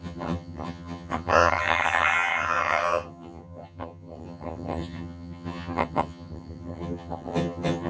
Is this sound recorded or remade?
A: remade